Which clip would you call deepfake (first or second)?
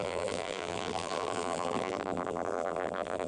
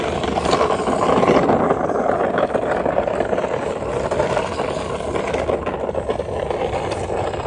first